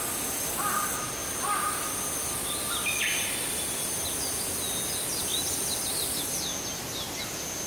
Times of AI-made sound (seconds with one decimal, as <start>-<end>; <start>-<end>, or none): none